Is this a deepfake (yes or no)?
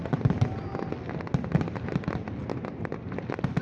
no